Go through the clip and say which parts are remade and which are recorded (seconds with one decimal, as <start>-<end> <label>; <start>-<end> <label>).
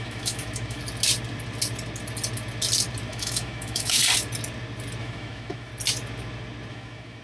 0.0-0.8 remade; 0.8-3.1 recorded; 3.1-4.0 remade; 4.0-5.0 recorded; 5.0-5.7 remade; 5.7-6.7 recorded; 6.7-7.2 remade